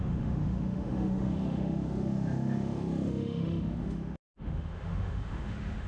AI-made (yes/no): yes